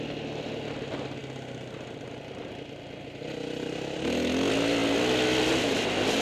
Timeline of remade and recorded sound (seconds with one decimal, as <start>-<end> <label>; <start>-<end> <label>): 0.0-6.2 recorded